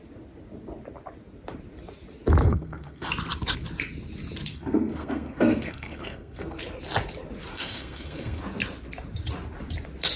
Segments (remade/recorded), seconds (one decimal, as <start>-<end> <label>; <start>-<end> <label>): 0.0-2.4 recorded; 2.4-3.1 remade; 3.1-4.5 recorded; 4.5-6.6 remade; 6.6-7.5 recorded; 7.5-8.4 remade; 8.4-10.2 recorded